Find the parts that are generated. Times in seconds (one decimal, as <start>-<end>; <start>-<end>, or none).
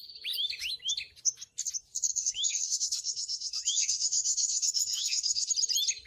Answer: 2.1-5.5